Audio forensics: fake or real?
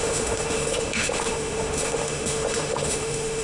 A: fake